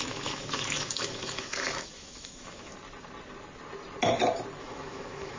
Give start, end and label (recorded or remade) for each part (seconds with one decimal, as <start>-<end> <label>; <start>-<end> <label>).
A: 0.0-2.7 remade; 2.7-4.6 recorded; 4.6-5.4 remade